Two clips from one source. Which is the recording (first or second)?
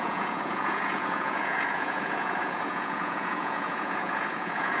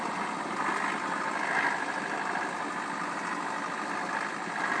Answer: second